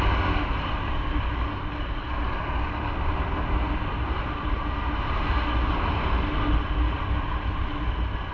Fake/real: real